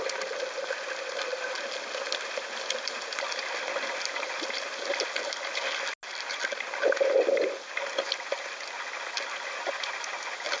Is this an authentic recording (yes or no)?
yes